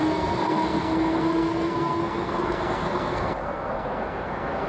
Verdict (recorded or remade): remade